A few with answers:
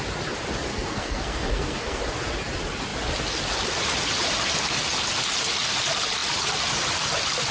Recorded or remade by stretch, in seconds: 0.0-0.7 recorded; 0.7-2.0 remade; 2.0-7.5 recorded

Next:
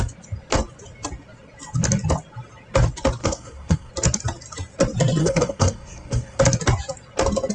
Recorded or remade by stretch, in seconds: 0.0-3.2 recorded; 3.2-3.9 remade; 3.9-5.2 recorded; 5.2-6.4 remade; 6.4-7.5 recorded

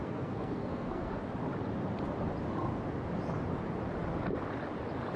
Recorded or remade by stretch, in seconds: 0.0-1.2 remade; 1.2-5.2 recorded

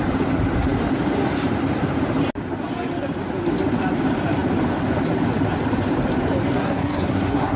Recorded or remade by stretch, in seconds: 0.0-6.5 recorded; 6.5-7.6 remade

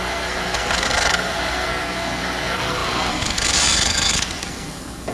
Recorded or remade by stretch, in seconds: 0.0-5.1 remade

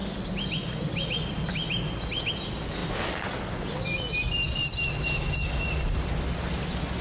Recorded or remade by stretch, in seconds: 0.0-7.0 recorded